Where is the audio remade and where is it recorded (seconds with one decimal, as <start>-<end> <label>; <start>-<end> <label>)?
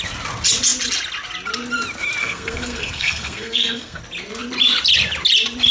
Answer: 0.0-2.2 recorded; 2.2-4.0 remade; 4.0-5.7 recorded